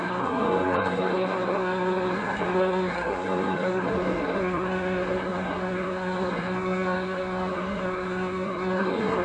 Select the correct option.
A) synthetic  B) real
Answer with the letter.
A